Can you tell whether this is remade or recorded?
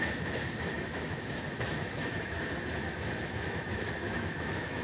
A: remade